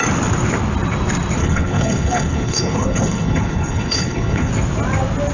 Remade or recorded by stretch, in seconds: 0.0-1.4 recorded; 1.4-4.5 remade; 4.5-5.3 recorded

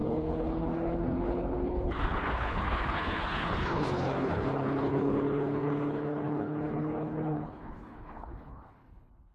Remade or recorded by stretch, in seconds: 0.0-9.3 remade

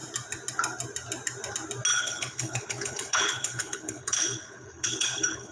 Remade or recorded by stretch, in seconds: 0.0-1.9 recorded; 1.9-5.5 remade

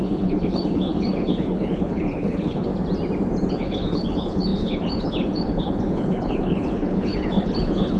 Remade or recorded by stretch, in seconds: 0.0-2.7 remade; 2.7-3.5 recorded; 3.5-8.0 remade